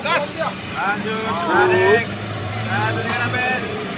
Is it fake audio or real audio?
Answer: fake